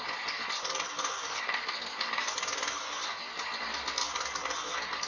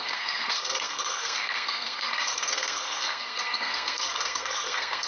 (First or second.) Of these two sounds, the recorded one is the first